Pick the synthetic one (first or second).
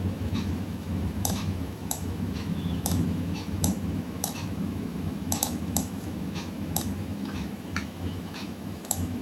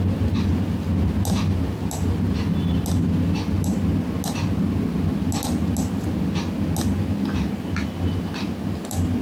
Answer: first